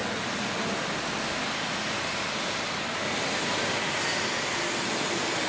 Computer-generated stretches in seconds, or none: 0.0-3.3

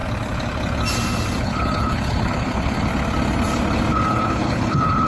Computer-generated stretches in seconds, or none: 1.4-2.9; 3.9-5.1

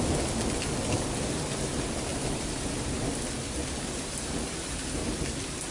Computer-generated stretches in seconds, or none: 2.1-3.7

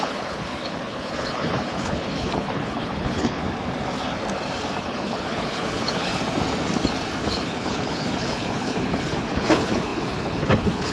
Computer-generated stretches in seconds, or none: 0.0-3.4; 4.8-6.1; 7.2-10.9